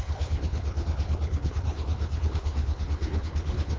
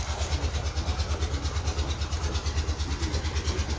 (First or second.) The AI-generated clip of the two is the first